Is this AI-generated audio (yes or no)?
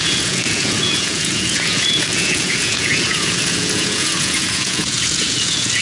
yes